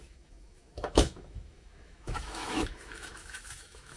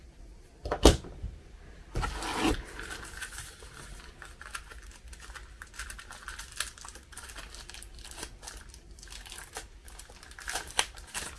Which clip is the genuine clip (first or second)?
second